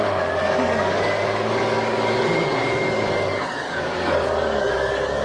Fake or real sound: fake